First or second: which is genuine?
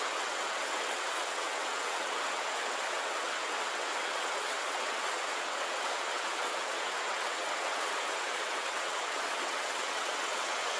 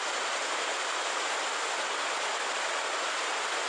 second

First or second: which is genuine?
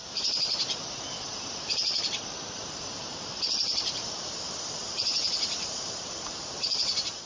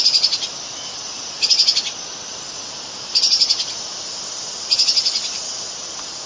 second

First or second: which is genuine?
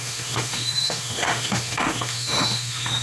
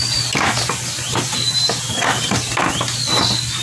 second